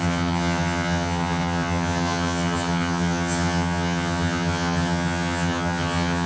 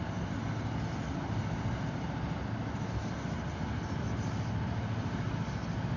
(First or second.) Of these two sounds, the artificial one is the first